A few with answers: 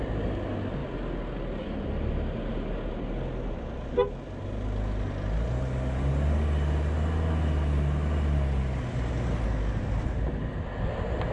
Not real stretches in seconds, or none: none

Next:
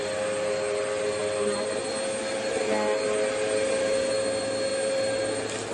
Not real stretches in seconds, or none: none

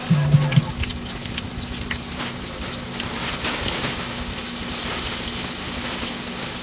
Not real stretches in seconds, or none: none

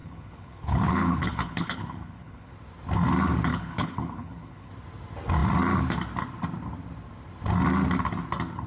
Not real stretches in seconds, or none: 0.0-2.5 (codec, HILCodec); 3.5-4.7